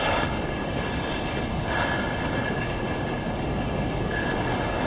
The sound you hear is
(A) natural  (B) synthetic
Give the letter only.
B